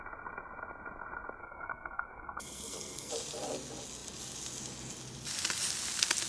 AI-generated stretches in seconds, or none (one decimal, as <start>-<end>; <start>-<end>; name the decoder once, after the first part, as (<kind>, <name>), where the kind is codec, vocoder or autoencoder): 1.4-3.1 (codec, SNAC)